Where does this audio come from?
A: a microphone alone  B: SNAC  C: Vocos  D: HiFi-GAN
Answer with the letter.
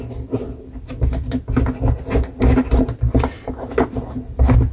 A